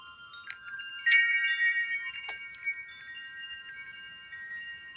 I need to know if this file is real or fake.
fake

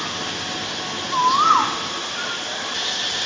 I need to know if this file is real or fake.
real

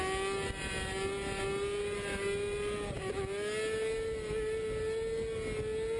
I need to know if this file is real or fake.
real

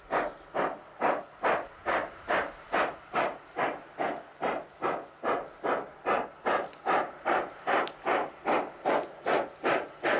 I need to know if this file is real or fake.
real